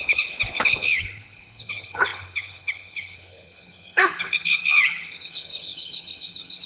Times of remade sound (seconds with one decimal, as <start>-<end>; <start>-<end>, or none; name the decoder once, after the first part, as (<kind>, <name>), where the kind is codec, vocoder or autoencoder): 0.0-6.7 (codec, HILCodec)